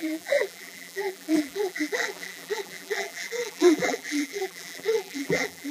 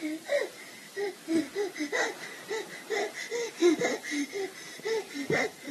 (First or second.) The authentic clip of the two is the second